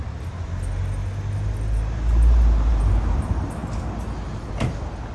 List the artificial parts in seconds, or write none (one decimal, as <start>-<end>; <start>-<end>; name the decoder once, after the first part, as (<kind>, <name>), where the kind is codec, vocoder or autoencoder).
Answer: none